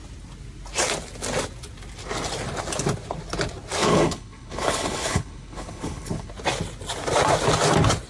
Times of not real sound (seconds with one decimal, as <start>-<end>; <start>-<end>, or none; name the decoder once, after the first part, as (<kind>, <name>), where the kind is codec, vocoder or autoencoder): 3.8-6.3 (codec, HILCodec)